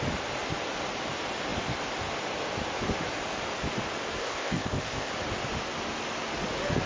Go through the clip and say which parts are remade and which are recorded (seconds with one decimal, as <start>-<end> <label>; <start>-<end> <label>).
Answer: 0.0-4.2 recorded; 4.2-5.1 remade; 5.1-6.9 recorded